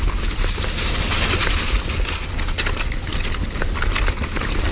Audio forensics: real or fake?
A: real